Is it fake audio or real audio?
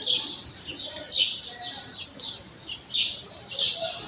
real